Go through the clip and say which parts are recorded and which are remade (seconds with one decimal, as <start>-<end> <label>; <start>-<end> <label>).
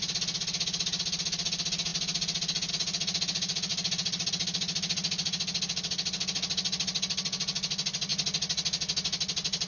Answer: 0.0-9.7 recorded